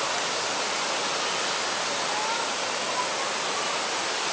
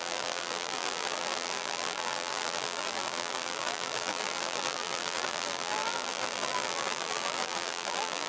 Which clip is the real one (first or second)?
first